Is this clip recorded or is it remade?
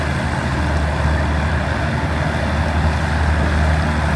recorded